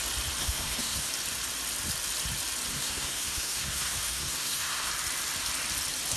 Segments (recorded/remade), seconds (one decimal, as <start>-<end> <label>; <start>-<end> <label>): 0.0-0.4 recorded; 0.4-1.1 remade; 1.1-2.7 recorded; 2.7-4.9 remade; 4.9-6.2 recorded